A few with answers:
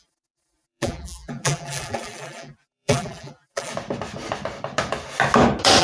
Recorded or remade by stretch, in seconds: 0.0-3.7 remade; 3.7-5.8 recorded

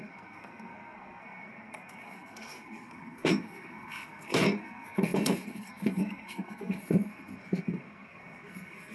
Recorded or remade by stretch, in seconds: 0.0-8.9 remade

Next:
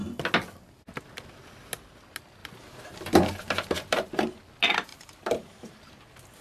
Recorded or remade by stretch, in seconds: 0.0-2.4 recorded; 2.4-4.2 remade; 4.2-4.9 recorded; 4.9-5.9 remade; 5.9-6.4 recorded

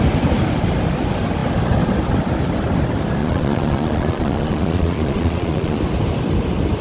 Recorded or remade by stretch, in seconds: 0.0-3.2 recorded; 3.2-5.8 remade; 5.8-6.8 recorded

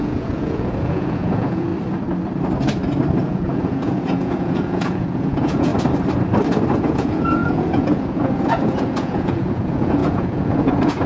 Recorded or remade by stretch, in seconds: 0.0-1.7 remade; 1.7-3.2 recorded; 3.2-5.7 remade; 5.7-6.8 recorded; 6.8-11.1 remade